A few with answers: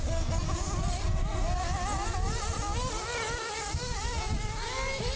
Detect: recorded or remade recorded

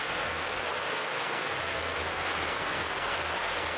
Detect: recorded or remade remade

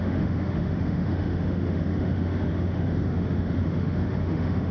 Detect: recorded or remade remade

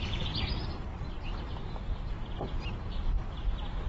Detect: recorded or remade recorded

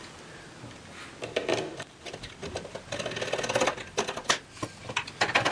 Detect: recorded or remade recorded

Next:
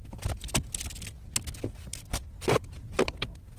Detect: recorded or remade recorded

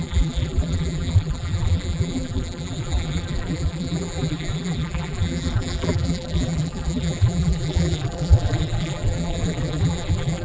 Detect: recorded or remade remade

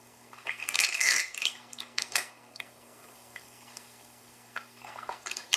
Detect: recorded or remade remade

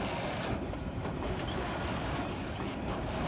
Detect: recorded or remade recorded